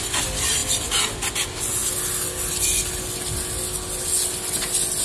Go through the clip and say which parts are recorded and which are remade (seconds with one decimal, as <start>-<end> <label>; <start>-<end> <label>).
0.0-5.0 recorded